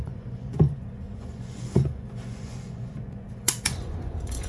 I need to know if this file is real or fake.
fake